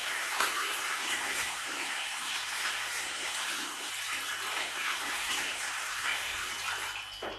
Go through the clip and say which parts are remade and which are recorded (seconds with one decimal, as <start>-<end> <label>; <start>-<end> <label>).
0.0-3.9 remade; 3.9-4.6 recorded; 4.6-6.5 remade; 6.5-7.4 recorded